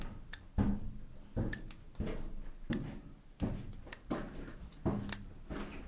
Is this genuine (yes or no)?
yes